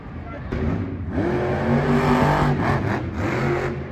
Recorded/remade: recorded